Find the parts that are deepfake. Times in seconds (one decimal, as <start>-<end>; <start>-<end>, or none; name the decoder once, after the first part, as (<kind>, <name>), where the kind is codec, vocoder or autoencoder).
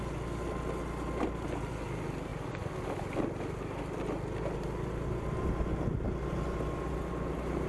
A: none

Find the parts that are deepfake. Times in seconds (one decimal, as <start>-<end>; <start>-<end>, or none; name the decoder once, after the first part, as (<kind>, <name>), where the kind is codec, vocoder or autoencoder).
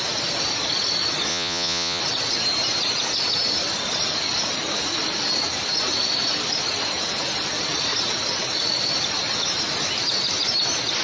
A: 1.3-2.0 (vocoder, Vocos)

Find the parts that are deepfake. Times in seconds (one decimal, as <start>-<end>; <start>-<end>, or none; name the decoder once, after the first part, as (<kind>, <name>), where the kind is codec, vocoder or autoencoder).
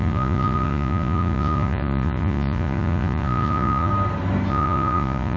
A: 0.0-3.9 (vocoder, Vocos); 4.5-5.4